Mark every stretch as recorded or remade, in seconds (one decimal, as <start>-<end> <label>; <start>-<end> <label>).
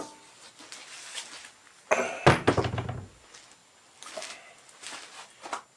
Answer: 0.0-5.8 recorded